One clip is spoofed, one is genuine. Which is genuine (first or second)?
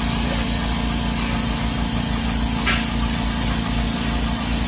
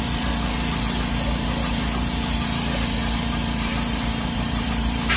first